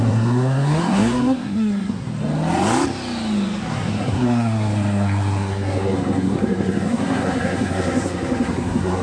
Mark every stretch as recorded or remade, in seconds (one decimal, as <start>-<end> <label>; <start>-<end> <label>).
0.0-2.1 remade; 2.1-3.7 recorded; 3.7-9.0 remade

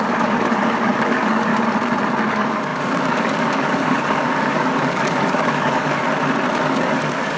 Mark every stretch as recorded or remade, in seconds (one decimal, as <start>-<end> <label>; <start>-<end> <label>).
0.0-1.5 remade; 1.5-2.3 recorded; 2.3-6.0 remade; 6.0-6.6 recorded; 6.6-7.4 remade

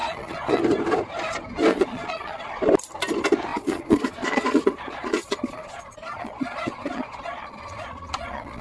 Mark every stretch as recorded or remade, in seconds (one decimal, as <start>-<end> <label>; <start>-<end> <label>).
0.0-0.6 remade; 0.6-1.7 recorded; 1.7-2.4 remade; 2.4-3.5 recorded; 3.5-8.6 remade

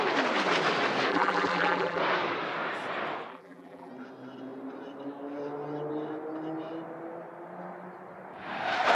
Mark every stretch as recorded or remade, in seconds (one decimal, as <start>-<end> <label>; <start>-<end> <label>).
0.0-1.1 recorded; 1.1-2.0 remade; 2.0-3.3 recorded; 3.3-3.9 remade; 3.9-9.0 recorded